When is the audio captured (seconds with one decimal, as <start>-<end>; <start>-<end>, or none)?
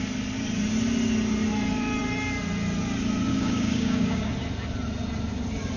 0.0-3.3; 4.3-5.8